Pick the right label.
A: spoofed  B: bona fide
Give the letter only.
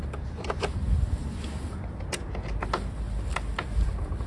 B